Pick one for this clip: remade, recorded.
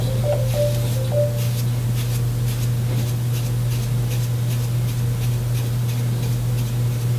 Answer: recorded